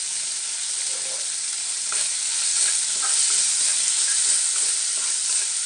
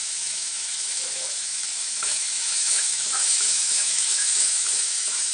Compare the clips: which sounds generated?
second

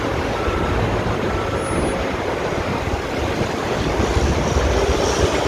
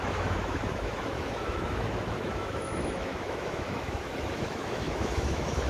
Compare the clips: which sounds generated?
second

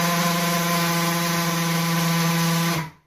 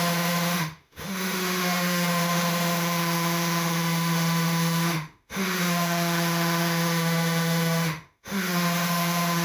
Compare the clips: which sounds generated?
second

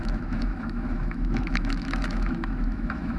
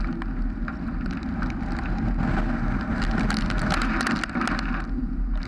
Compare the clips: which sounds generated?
first